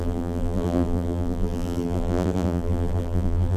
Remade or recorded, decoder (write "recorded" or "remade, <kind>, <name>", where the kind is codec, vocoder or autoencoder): remade, vocoder, BigVGAN v2